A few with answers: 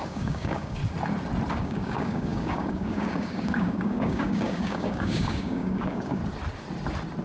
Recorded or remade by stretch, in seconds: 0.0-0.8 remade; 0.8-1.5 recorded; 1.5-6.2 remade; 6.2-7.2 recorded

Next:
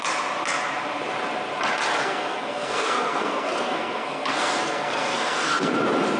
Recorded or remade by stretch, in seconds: 0.0-2.0 recorded; 2.0-5.7 remade; 5.7-6.2 recorded

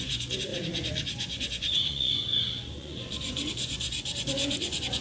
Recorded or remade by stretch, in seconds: 0.0-5.0 remade

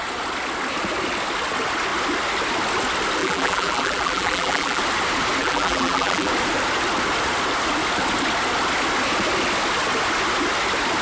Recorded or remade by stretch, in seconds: 0.0-3.2 recorded; 3.2-4.8 remade; 4.8-5.4 recorded; 5.4-6.3 remade; 6.3-11.0 recorded